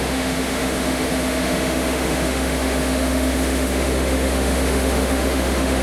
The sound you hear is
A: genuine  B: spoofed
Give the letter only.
B